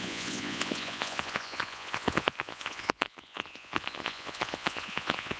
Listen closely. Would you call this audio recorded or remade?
remade